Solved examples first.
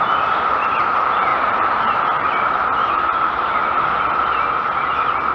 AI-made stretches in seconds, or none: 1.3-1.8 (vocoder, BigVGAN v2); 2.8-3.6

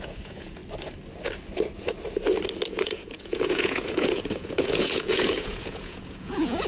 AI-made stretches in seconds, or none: 0.0-0.6 (vocoder, Vocos); 2.7-6.7